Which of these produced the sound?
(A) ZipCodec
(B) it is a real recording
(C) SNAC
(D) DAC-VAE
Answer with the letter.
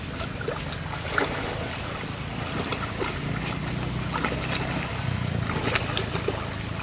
B